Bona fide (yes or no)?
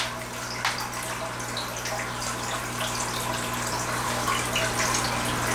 yes